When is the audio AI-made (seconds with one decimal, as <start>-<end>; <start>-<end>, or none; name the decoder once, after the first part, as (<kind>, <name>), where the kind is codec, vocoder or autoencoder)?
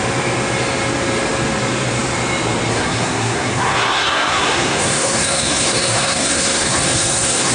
2.7-7.5 (codec, SNAC)